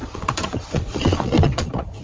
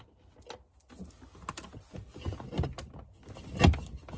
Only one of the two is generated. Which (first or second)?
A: first